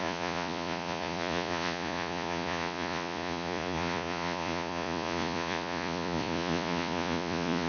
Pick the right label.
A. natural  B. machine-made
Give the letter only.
B